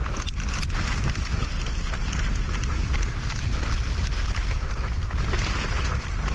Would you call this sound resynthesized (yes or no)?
no